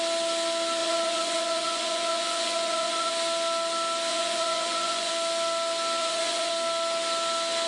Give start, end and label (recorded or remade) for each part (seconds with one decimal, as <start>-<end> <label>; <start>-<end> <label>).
0.0-0.8 recorded; 0.8-3.1 remade; 3.1-4.1 recorded; 4.1-5.1 remade; 5.1-6.0 recorded; 6.0-6.5 remade; 6.5-7.7 recorded

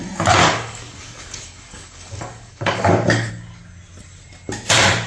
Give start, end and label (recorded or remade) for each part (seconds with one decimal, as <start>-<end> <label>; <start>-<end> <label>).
0.0-0.4 recorded; 0.4-3.3 remade; 3.3-5.1 recorded

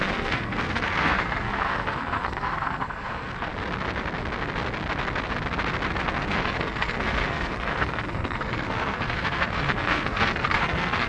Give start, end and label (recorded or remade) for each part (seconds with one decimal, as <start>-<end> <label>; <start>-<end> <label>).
0.0-3.5 remade; 3.5-5.9 recorded; 5.9-11.1 remade